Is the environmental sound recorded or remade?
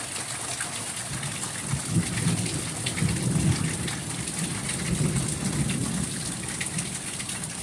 recorded